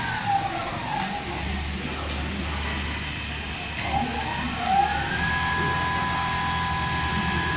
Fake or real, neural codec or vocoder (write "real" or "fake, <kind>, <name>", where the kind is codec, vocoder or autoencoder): real